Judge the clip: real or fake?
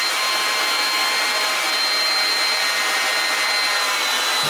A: real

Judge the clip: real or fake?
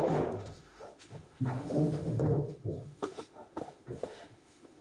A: fake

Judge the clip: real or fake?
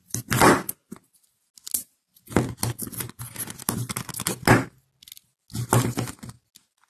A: real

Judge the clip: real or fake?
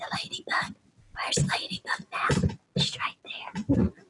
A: real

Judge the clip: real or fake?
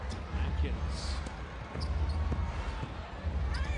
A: real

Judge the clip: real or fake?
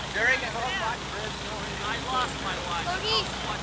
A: real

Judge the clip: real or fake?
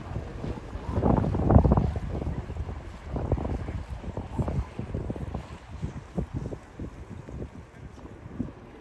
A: real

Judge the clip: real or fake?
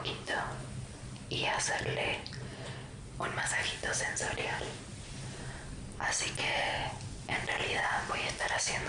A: real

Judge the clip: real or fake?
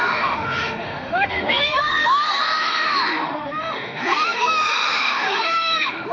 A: fake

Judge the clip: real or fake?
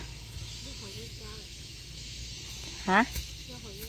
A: fake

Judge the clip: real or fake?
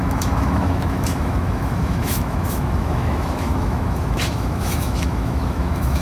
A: fake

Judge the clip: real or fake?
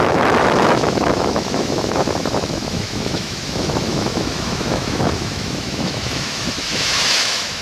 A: fake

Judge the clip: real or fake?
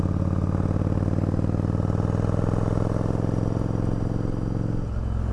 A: real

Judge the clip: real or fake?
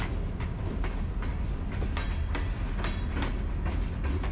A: real